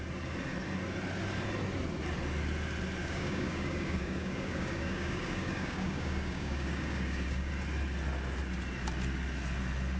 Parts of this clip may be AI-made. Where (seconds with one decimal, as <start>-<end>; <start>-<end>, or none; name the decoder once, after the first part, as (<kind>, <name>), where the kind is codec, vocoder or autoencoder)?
3.0-7.5 (codec, DAC)